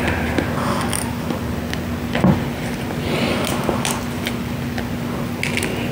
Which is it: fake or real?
real